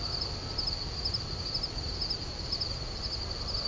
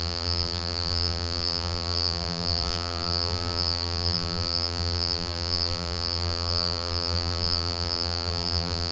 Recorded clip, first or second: first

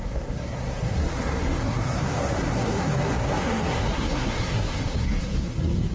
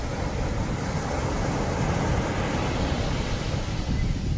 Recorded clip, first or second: second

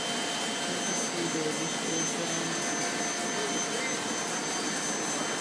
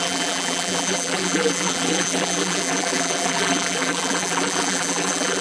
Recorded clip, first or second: first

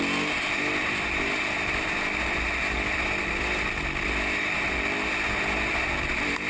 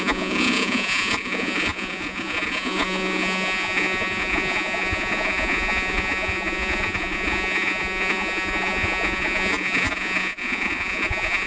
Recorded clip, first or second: first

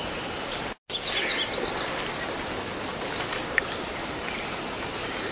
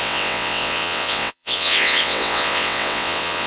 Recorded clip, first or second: first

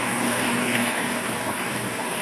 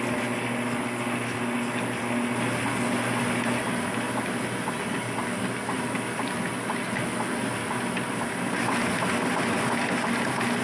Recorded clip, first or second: second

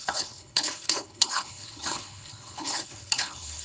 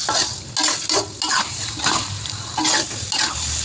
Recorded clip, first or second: second